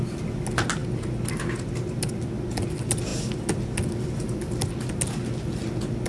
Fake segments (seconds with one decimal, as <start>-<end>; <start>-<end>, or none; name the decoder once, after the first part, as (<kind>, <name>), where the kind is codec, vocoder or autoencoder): none